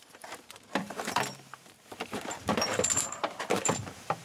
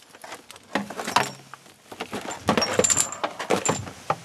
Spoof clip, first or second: first